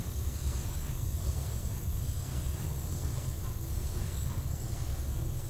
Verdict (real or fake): fake